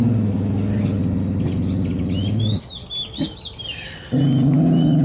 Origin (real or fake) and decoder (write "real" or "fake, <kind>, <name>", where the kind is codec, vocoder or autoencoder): real